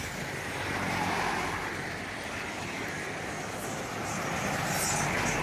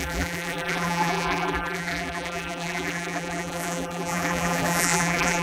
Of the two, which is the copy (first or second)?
second